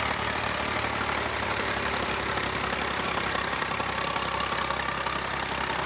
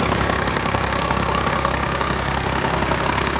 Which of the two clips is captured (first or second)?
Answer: first